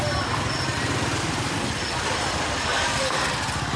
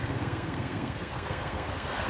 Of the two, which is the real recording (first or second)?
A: first